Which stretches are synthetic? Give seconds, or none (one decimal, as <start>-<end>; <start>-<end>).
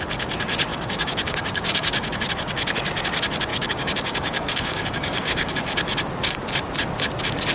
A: 0.7-2.3; 3.5-5.5